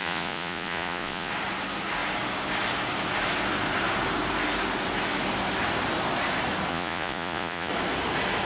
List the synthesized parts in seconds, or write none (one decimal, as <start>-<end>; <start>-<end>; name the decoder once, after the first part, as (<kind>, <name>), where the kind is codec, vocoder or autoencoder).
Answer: 0.0-1.3 (vocoder, Vocos); 6.7-7.7